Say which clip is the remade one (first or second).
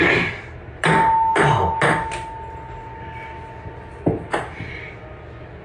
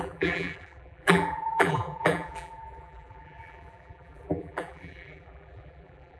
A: second